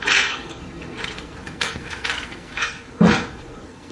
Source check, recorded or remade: remade